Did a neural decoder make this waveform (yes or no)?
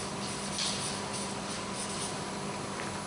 no